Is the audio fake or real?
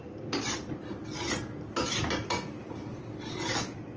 real